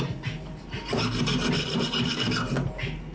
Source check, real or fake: real